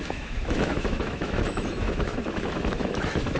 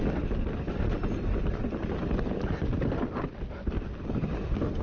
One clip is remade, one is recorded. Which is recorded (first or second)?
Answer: second